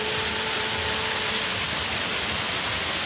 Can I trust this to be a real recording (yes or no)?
yes